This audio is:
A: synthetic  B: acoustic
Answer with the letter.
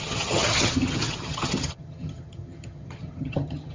A